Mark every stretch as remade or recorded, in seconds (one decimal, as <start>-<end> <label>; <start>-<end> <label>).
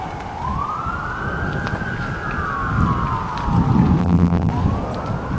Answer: 0.0-4.0 recorded; 4.0-4.5 remade; 4.5-5.4 recorded